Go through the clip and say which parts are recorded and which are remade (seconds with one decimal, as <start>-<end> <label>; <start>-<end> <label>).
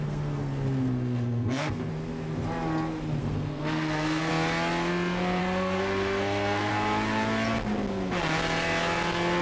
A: 0.0-1.9 remade; 1.9-3.2 recorded; 3.2-4.3 remade; 4.3-5.4 recorded; 5.4-6.7 remade; 6.7-9.4 recorded